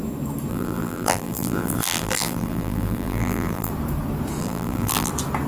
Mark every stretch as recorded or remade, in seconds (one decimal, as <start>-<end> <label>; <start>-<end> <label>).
0.0-0.5 recorded; 0.5-3.7 remade; 3.7-4.4 recorded; 4.4-5.1 remade; 5.1-5.5 recorded